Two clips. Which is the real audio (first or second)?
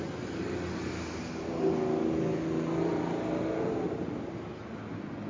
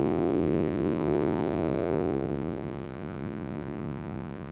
first